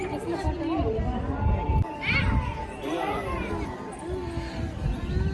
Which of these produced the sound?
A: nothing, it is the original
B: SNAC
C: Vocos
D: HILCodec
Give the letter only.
A